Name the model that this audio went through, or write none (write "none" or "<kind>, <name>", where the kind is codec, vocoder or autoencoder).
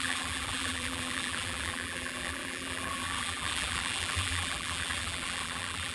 vocoder, BigVGAN v2